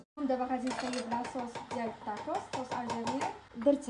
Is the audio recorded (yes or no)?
yes